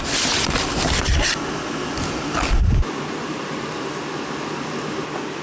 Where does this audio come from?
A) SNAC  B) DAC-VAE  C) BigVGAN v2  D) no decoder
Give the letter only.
D